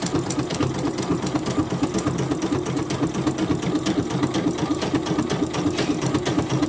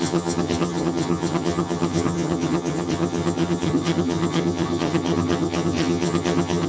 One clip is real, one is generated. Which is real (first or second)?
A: first